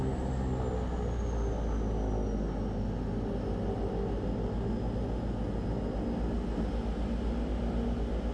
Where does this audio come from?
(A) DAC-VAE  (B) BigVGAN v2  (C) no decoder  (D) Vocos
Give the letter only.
C